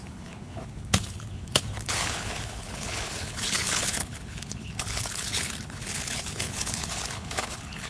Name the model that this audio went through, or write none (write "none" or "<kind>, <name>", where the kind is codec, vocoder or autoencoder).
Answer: codec, HILCodec